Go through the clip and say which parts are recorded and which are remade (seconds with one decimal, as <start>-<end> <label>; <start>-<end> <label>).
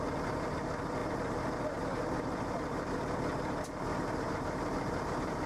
0.0-5.5 recorded